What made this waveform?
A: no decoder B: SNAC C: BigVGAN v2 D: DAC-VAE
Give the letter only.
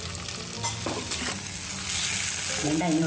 A